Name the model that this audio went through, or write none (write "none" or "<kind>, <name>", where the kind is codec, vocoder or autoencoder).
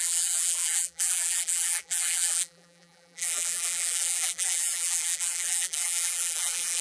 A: vocoder, BigVGAN v2